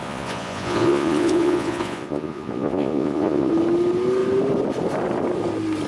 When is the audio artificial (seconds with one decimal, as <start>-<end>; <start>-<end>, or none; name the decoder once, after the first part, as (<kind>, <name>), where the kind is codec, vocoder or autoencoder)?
0.0-3.5 (vocoder, Vocos)